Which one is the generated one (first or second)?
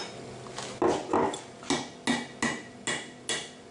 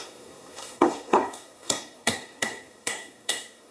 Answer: second